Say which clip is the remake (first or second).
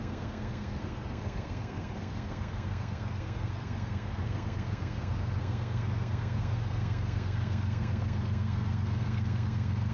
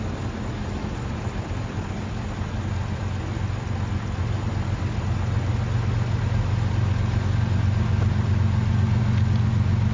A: first